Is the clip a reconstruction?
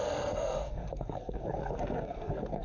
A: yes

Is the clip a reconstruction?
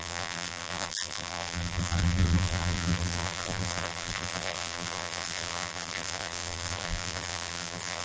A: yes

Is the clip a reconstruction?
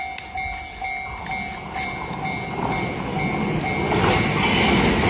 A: no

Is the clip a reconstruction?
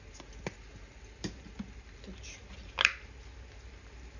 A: no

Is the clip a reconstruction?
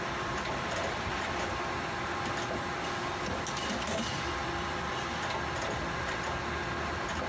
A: no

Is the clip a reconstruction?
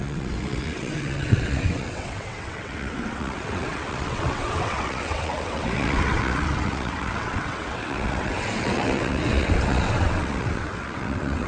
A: yes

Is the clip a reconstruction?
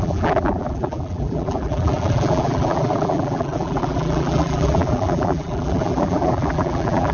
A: yes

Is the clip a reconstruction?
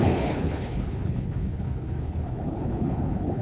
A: yes